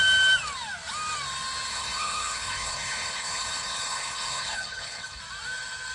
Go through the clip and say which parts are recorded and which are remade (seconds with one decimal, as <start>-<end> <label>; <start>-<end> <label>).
0.0-1.7 recorded; 1.7-5.2 remade; 5.2-5.9 recorded

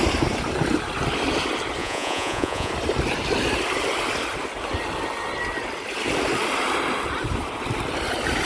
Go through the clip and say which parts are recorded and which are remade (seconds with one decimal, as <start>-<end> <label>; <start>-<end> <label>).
0.0-1.8 recorded; 1.8-2.7 remade; 2.7-8.5 recorded

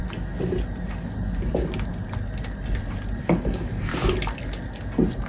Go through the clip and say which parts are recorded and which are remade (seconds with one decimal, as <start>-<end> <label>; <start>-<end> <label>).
0.0-3.2 recorded; 3.2-3.9 remade; 3.9-5.3 recorded

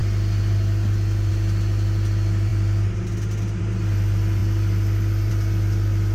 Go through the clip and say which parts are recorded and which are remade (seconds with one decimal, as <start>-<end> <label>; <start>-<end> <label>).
0.0-6.1 recorded

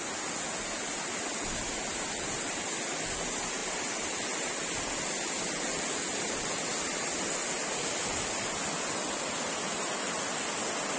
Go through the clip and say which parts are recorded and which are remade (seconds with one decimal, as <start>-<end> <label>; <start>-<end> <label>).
0.0-11.0 recorded

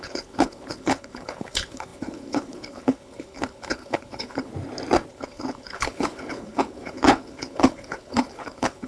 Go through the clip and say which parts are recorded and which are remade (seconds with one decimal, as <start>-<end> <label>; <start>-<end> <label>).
0.0-4.5 remade; 4.5-5.1 recorded; 5.1-8.9 remade

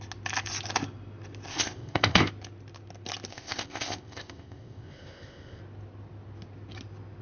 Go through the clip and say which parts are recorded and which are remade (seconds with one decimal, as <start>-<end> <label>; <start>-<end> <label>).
0.0-1.5 recorded; 1.5-2.3 remade; 2.3-3.3 recorded; 3.3-5.6 remade; 5.6-7.2 recorded